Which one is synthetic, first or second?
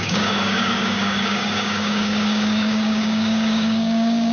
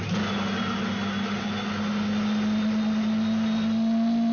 first